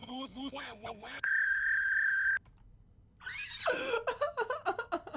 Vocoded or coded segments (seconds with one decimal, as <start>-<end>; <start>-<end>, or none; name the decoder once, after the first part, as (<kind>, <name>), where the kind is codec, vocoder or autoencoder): 0.0-2.3 (codec, HILCodec)